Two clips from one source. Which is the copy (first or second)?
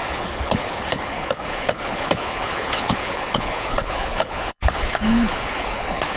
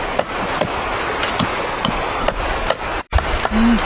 first